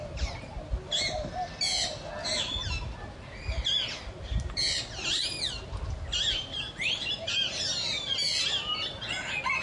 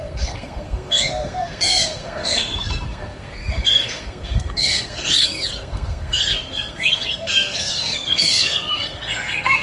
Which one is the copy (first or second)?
second